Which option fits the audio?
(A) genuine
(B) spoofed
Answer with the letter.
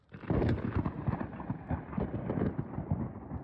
A